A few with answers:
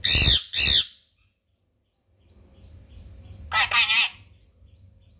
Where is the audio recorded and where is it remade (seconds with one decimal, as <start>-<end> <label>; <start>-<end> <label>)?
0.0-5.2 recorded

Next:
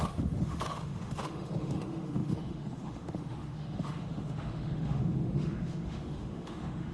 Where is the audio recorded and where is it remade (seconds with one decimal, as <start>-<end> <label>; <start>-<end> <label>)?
0.0-6.9 remade

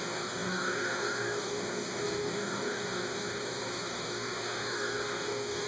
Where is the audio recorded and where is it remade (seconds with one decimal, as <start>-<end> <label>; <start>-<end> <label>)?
0.0-5.7 remade

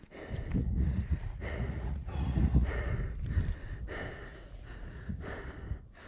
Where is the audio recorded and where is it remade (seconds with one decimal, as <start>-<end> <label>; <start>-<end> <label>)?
0.0-0.6 recorded; 0.6-2.9 remade; 2.9-4.3 recorded; 4.3-5.2 remade; 5.2-6.1 recorded

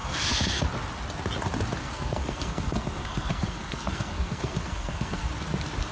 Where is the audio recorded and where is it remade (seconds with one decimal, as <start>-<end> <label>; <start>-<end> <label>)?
0.0-0.6 remade; 0.6-1.8 recorded; 1.8-5.3 remade; 5.3-5.9 recorded

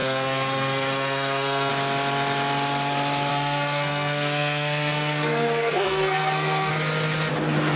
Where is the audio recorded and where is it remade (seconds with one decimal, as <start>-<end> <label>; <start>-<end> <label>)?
0.0-1.7 remade; 1.7-3.3 recorded; 3.3-6.7 remade; 6.7-7.8 recorded

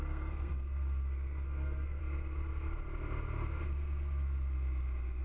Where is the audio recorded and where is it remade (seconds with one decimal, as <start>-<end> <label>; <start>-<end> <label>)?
0.0-2.0 remade; 2.0-5.2 recorded